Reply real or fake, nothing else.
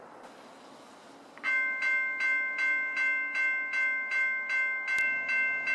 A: real